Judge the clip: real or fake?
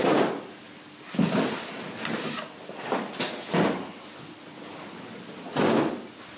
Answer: real